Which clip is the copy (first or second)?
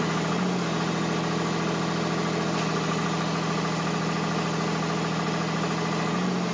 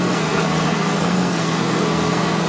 second